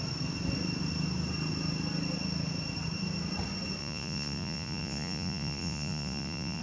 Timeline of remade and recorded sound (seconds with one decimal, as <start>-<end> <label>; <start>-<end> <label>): 0.0-3.8 recorded; 3.8-6.6 remade